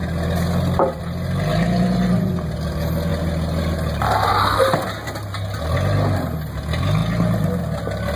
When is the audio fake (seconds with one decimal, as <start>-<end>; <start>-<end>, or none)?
none